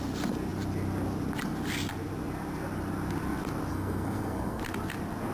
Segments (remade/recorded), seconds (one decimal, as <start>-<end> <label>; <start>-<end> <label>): 0.0-3.7 recorded; 3.7-4.6 remade; 4.6-5.3 recorded